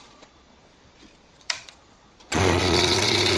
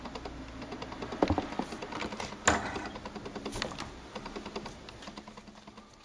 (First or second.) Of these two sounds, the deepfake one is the first